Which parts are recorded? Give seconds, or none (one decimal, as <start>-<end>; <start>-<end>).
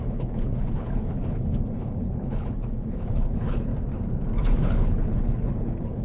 3.7-4.6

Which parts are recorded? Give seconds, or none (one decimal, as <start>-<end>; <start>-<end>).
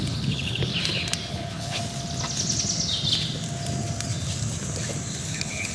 0.7-1.3; 1.8-5.2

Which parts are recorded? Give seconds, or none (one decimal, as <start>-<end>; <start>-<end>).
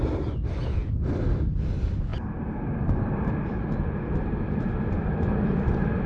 0.0-6.1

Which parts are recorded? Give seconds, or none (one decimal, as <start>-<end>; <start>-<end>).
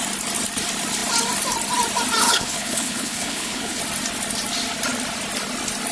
0.0-2.2; 3.8-5.9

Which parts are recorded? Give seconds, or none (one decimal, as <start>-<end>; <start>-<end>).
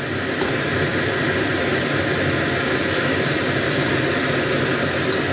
0.0-5.3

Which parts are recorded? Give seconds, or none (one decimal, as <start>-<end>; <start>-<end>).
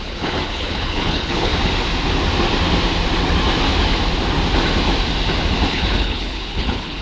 1.5-5.7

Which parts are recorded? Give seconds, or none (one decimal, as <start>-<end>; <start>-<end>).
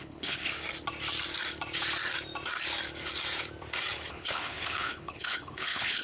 0.5-4.1